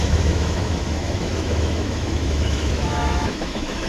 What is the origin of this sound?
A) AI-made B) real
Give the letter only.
A